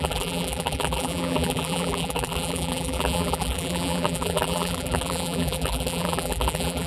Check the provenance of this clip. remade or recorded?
remade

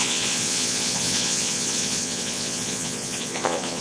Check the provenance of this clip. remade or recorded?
remade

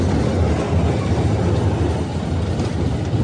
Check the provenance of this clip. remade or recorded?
recorded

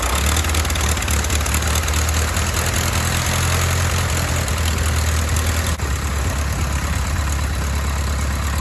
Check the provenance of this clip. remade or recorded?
recorded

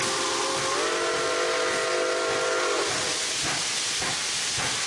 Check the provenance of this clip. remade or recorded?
recorded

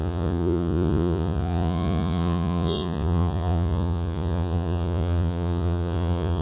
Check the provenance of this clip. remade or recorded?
remade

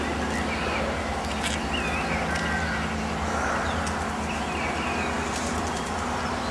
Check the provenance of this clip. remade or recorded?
recorded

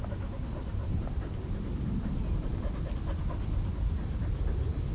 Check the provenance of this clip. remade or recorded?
recorded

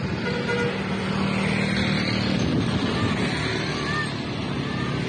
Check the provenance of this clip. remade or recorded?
recorded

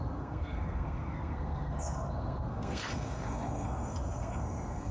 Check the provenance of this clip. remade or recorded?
remade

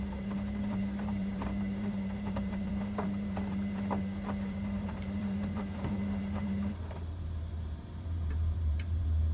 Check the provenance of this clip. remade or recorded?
remade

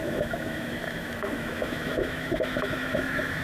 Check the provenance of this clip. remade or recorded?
remade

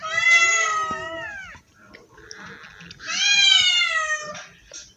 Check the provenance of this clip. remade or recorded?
recorded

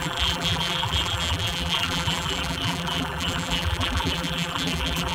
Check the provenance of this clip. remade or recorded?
remade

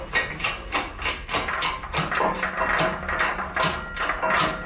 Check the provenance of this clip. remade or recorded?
recorded